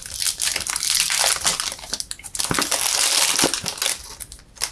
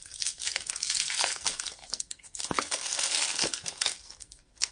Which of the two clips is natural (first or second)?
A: first